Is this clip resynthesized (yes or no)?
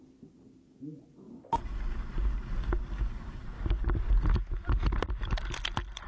no